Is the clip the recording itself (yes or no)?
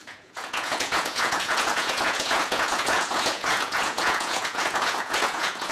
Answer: no